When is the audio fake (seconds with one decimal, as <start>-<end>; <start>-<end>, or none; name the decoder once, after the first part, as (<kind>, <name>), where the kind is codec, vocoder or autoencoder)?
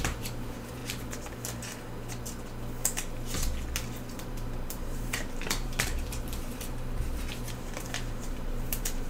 0.0-0.8 (vocoder, BigVGAN v2); 4.1-9.1